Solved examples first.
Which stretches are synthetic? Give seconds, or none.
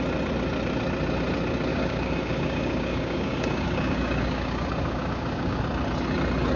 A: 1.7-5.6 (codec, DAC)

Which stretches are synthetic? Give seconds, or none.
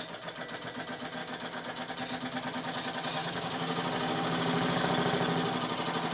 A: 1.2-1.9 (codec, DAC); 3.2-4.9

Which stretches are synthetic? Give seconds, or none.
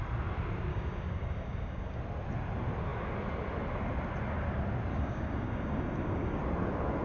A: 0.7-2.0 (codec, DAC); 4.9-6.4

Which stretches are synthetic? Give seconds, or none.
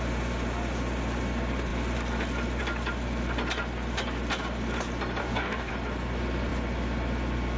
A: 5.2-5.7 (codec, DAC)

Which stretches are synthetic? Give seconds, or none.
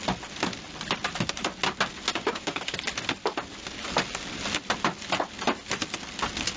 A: 2.1-2.8 (codec, DAC)